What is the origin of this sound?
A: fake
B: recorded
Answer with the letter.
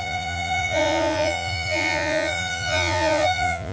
A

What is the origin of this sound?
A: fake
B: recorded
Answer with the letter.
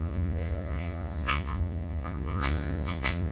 A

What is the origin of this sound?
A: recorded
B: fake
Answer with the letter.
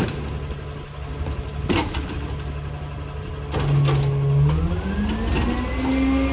A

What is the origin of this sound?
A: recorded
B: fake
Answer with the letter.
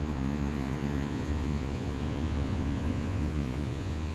B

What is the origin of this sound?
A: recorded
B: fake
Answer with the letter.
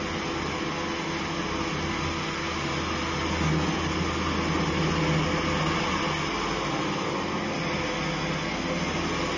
A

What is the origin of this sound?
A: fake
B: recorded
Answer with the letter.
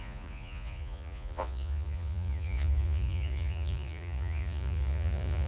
A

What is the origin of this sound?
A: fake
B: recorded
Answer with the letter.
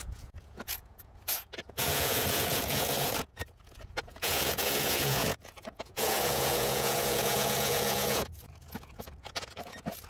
A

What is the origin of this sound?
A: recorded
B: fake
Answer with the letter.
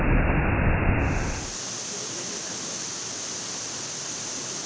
A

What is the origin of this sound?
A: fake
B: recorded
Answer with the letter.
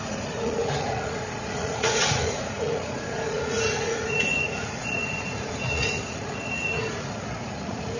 A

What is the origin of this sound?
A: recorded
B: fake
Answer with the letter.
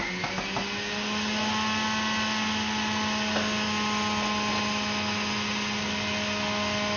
A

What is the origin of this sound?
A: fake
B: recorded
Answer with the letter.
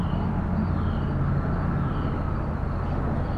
B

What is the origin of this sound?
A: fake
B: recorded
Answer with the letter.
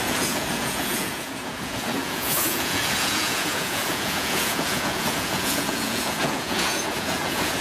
A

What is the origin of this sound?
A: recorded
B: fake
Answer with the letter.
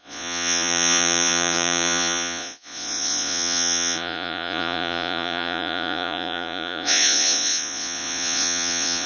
B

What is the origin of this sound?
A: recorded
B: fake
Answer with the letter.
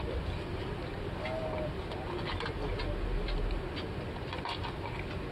A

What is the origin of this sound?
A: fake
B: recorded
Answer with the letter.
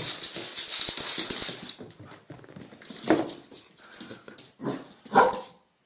B